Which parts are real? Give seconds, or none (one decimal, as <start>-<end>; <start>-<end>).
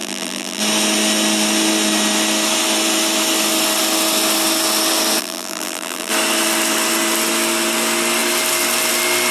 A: 0.6-5.2; 6.1-9.3